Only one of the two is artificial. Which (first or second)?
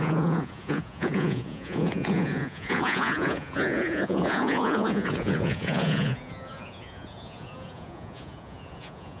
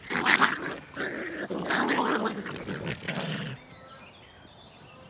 first